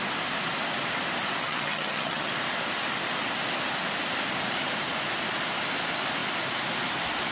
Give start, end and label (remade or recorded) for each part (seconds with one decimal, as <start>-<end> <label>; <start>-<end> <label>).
0.0-1.4 recorded; 1.4-2.3 remade; 2.3-7.3 recorded